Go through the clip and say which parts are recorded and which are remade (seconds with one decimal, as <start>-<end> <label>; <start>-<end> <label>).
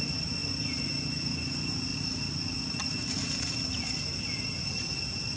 0.0-5.4 recorded